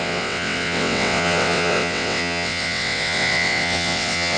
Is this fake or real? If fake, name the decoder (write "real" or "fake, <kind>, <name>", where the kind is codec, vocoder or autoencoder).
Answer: fake, vocoder, WaveNeXt